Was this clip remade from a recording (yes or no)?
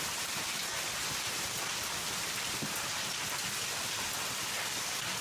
yes